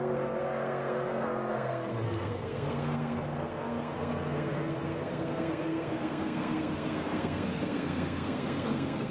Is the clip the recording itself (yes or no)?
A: no